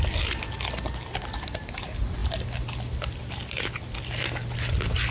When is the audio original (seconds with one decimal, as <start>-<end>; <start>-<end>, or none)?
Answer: 0.0-5.1